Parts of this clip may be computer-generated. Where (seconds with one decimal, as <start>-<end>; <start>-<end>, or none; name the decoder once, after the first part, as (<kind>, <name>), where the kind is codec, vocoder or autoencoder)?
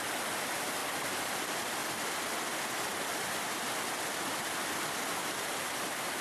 5.2-6.2 (vocoder, BigVGAN v2)